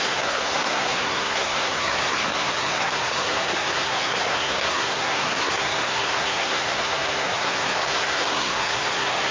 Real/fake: fake